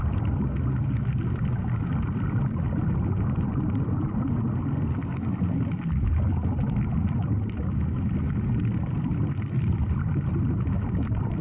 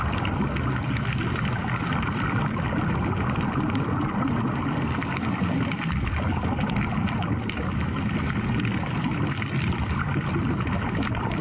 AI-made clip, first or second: second